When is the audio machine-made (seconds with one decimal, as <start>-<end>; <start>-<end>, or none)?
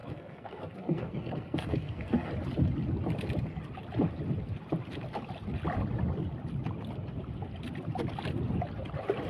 0.0-2.3